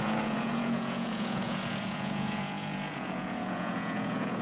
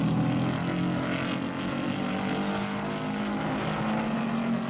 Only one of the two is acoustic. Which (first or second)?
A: second